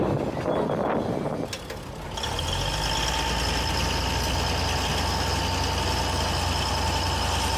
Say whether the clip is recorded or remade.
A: recorded